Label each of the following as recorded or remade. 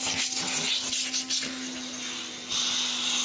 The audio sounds recorded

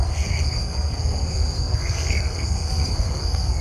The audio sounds remade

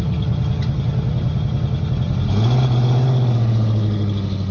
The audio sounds recorded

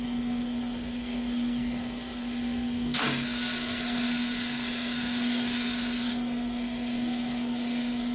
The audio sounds remade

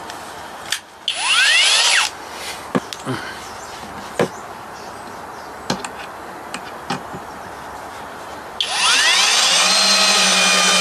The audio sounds recorded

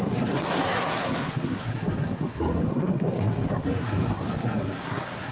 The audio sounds remade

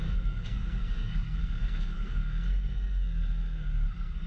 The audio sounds remade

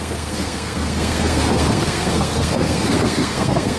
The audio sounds remade